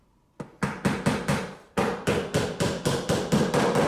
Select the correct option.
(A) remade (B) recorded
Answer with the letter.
B